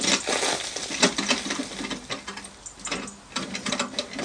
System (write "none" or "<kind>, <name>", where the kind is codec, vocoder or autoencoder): none